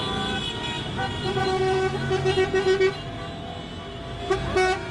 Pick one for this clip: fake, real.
real